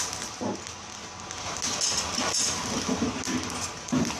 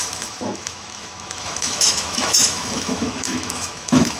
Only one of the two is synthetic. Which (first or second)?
second